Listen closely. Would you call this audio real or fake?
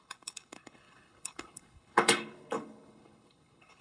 fake